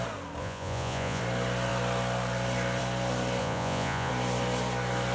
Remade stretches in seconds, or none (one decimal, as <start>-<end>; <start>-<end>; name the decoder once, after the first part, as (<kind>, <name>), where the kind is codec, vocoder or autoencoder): 0.4-1.2 (vocoder, Vocos); 3.4-4.1